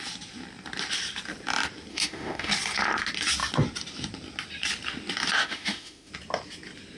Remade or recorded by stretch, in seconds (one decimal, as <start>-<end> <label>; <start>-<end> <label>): 0.0-1.9 recorded; 1.9-2.5 remade; 2.5-5.4 recorded; 5.4-6.1 remade; 6.1-7.0 recorded